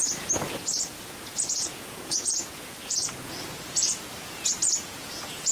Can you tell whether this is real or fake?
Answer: fake